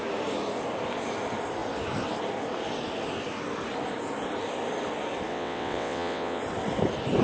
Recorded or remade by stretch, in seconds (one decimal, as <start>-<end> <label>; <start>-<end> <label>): 0.0-5.3 recorded; 5.3-6.4 remade; 6.4-7.2 recorded